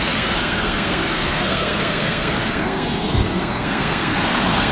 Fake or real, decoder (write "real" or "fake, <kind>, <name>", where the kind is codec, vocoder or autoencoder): fake, codec, SNAC